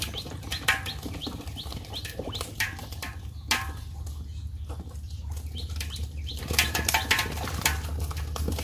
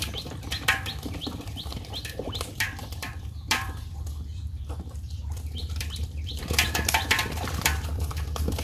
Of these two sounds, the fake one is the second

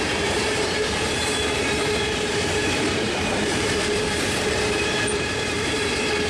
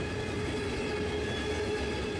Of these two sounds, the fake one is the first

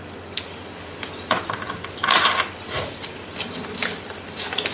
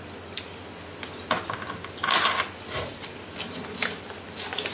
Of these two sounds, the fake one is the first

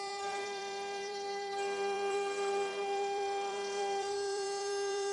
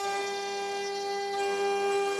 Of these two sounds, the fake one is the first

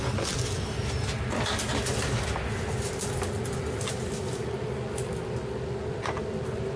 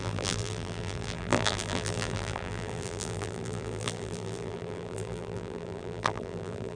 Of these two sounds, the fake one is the second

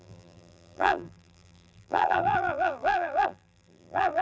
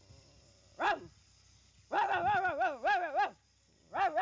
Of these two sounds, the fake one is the first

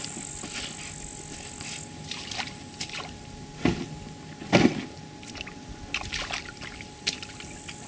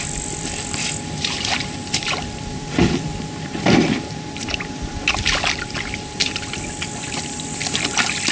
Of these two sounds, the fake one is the second